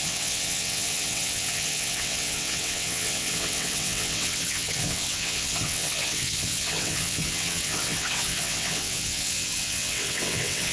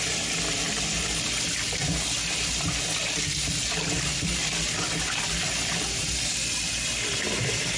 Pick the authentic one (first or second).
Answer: second